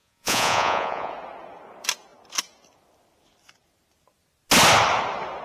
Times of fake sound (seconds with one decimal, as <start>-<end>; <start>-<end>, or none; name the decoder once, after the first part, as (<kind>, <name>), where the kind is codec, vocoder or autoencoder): 0.0-1.1 (vocoder, Vocos)